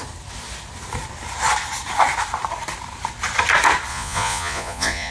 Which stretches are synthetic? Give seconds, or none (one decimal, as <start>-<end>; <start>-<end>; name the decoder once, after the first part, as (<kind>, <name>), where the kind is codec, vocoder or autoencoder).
3.9-5.1 (vocoder, Vocos)